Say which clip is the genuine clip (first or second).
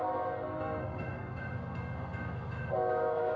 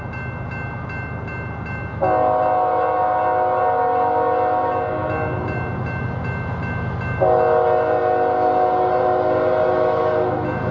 second